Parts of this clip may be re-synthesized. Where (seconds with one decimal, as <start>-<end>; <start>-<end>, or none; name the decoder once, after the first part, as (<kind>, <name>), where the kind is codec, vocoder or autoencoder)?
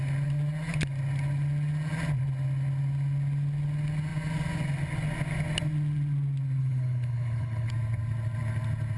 6.6-7.7 (codec, HILCodec)